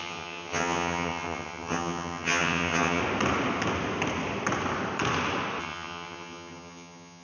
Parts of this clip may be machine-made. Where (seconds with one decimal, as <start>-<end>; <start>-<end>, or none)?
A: 0.0-3.0; 5.6-7.2